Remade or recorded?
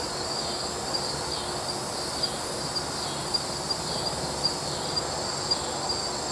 recorded